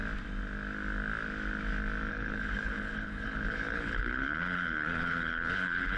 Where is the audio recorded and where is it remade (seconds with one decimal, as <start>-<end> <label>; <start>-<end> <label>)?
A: 0.0-2.1 recorded; 2.1-6.0 remade